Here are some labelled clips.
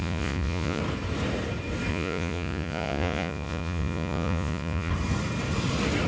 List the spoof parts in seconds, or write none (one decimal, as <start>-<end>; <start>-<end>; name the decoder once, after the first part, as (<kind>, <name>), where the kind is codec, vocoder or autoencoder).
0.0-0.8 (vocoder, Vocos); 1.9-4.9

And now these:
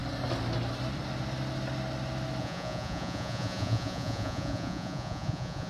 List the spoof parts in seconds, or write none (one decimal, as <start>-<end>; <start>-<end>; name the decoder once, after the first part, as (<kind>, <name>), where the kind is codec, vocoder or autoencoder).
2.4-5.7 (vocoder, Vocos)

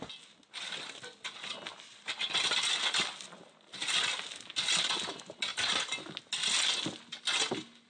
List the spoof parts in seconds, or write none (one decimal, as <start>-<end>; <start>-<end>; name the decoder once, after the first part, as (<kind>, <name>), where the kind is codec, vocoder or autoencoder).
none

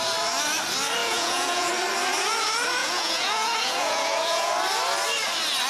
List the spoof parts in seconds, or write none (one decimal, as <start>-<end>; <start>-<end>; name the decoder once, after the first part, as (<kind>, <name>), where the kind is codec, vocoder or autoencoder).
1.0-1.7 (vocoder, Vocos); 2.8-4.5